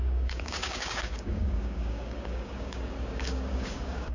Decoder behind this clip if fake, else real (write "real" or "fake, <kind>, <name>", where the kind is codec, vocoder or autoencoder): fake, codec, DAC